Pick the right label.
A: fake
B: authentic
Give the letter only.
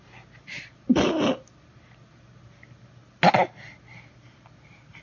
B